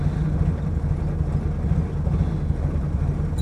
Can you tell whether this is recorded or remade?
recorded